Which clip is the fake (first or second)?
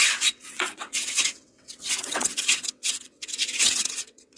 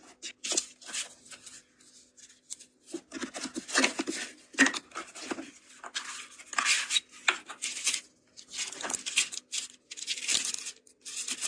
first